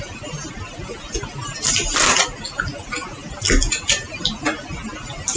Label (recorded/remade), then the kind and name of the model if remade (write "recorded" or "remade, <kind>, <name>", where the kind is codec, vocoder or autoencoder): recorded